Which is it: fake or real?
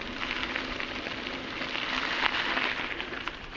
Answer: real